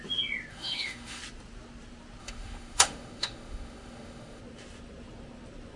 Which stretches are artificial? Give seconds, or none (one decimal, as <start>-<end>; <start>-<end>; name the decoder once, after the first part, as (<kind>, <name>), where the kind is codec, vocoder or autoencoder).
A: 0.5-1.2 (autoencoder, DAC-VAE); 2.2-4.4